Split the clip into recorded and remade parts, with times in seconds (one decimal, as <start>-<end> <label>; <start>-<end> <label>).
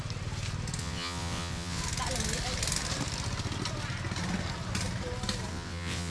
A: 0.0-0.8 recorded; 0.8-1.8 remade; 1.8-5.5 recorded; 5.5-6.1 remade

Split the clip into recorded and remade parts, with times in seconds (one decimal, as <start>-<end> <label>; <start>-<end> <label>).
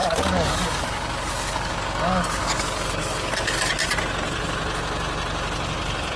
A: 0.0-3.7 remade; 3.7-6.2 recorded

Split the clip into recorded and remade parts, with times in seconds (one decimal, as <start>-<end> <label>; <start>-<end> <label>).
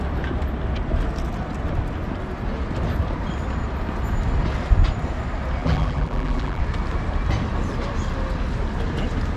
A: 0.0-5.6 recorded; 5.6-6.6 remade; 6.6-9.4 recorded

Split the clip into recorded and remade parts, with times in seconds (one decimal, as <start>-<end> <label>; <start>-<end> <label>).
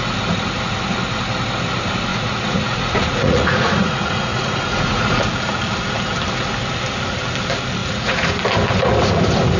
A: 0.0-2.1 recorded; 2.1-5.2 remade; 5.2-7.8 recorded; 7.8-8.3 remade; 8.3-9.6 recorded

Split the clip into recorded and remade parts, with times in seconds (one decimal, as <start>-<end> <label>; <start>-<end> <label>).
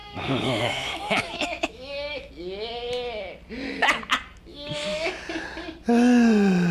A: 0.0-2.3 remade; 2.3-4.5 recorded; 4.5-5.1 remade; 5.1-6.7 recorded